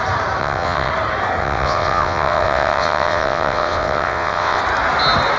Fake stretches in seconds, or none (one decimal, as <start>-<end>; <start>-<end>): 0.4-0.9; 1.4-4.6